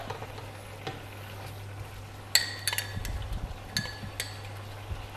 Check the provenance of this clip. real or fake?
real